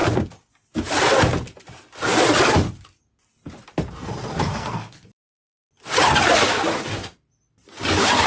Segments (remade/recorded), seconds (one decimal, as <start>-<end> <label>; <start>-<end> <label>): 0.0-4.5 recorded; 4.5-5.1 remade; 5.1-8.3 recorded